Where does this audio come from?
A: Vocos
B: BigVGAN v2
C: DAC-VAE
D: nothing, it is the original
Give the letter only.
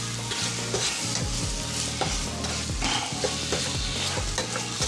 D